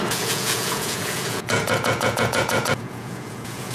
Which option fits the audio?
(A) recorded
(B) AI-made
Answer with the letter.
B